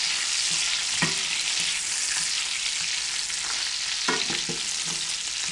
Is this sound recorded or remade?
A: recorded